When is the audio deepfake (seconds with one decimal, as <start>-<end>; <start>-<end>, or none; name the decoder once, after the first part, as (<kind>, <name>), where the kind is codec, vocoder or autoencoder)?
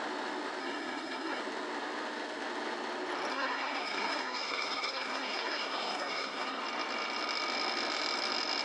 0.6-1.4 (codec, SNAC); 3.3-6.6